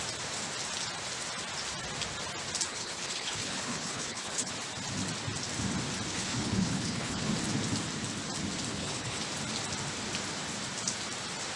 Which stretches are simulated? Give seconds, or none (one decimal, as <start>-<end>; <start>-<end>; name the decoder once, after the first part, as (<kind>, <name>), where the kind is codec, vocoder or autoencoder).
2.7-4.5 (codec, HILCodec); 6.1-7.3; 8.7-9.2